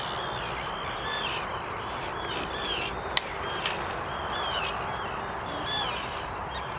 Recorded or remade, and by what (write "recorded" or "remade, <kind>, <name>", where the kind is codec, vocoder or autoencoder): recorded